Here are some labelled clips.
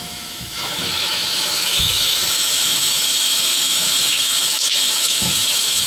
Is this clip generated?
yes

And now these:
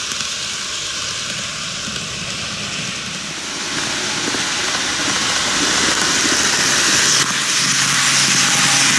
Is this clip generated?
no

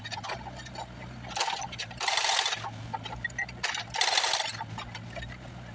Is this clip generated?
no